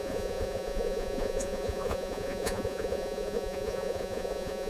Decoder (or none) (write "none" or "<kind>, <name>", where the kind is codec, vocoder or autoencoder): vocoder, Vocos